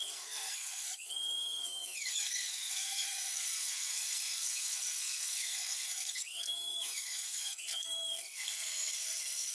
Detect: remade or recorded remade